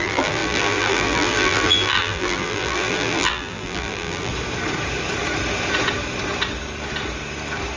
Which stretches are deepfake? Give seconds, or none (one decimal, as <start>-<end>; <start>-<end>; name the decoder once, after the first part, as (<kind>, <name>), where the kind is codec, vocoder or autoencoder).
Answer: 0.0-4.3 (vocoder, BigVGAN v2)

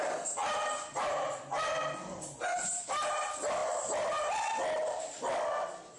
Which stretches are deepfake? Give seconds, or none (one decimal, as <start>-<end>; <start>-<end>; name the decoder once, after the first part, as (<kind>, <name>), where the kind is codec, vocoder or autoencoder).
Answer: none

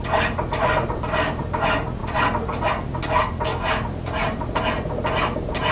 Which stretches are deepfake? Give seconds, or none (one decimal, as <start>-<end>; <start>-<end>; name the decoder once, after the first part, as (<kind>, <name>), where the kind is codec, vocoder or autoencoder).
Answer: 3.5-4.6 (vocoder, BigVGAN v2)

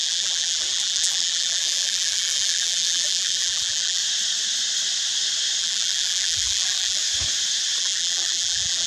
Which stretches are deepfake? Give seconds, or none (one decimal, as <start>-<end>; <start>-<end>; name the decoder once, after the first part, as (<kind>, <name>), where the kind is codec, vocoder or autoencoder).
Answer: 0.0-4.0 (vocoder, BigVGAN v2); 5.6-7.0; 7.8-8.9

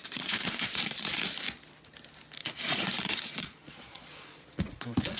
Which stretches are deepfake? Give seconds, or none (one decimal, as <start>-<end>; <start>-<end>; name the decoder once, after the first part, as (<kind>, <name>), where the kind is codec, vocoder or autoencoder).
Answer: 0.0-1.2 (vocoder, Vocos); 2.4-5.2